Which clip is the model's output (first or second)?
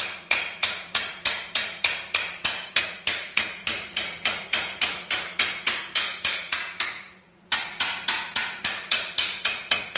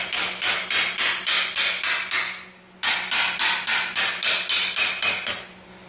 first